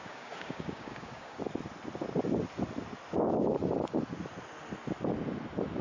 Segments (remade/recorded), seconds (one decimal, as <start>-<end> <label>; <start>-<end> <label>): 0.0-1.4 remade; 1.4-5.8 recorded